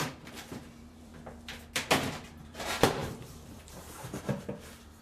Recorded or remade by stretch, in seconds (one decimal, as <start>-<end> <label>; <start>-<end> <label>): 0.0-1.1 remade; 1.1-2.4 recorded; 2.4-5.0 remade